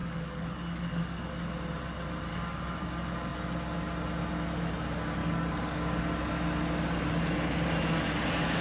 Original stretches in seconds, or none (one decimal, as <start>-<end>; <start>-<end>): 1.3-2.3; 2.8-5.2; 6.0-8.6